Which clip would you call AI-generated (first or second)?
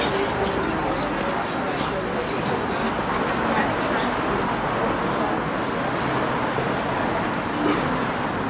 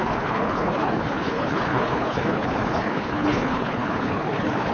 second